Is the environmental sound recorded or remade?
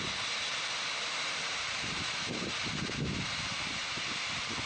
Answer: recorded